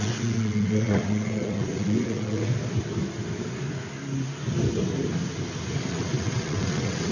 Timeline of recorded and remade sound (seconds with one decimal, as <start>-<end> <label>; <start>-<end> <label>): 0.0-2.5 remade; 2.5-5.9 recorded; 5.9-7.1 remade